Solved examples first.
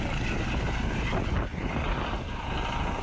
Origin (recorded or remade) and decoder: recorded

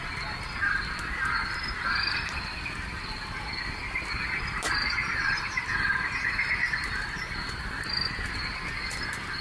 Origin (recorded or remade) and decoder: recorded